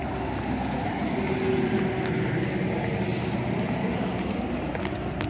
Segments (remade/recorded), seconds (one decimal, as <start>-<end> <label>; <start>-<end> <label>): 0.0-5.3 recorded